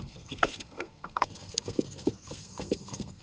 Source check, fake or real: fake